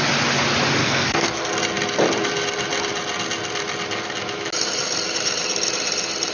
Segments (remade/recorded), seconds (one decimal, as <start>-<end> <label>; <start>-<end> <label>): 0.0-0.8 recorded; 0.8-1.5 remade; 1.5-6.3 recorded